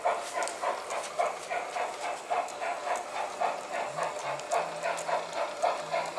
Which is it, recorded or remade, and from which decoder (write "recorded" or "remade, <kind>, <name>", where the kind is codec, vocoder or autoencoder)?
recorded